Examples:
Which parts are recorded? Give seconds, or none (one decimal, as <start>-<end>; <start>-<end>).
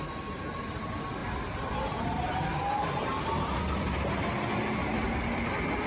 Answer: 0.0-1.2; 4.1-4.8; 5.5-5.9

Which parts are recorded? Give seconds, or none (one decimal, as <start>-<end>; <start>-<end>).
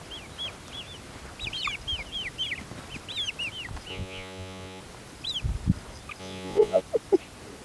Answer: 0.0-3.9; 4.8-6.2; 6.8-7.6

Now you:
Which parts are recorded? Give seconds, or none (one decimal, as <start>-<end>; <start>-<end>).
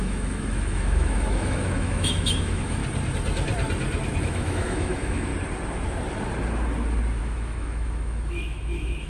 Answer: 2.8-4.2; 5.3-7.2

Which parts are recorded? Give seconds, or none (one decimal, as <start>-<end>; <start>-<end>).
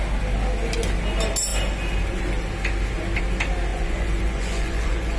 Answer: 0.0-3.7